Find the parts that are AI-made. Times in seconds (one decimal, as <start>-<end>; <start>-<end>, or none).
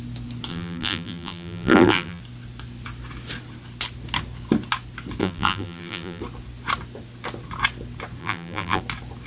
0.5-2.2; 5.2-6.2; 8.2-8.8